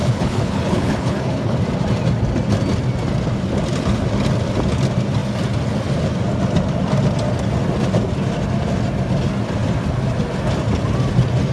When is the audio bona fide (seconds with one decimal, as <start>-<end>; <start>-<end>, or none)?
1.6-11.5